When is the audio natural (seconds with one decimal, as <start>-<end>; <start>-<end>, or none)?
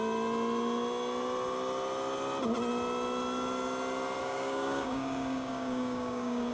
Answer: 0.0-4.2